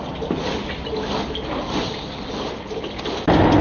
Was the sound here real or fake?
real